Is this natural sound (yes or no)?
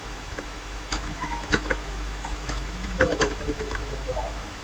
no